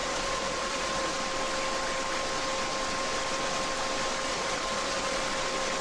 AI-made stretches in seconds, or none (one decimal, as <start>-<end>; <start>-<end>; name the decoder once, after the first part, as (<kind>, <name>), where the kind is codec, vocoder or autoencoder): 0.0-1.2 (vocoder, Vocos); 4.3-5.2